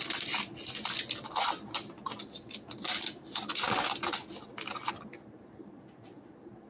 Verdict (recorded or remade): recorded